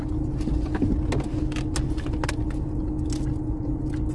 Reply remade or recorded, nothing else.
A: recorded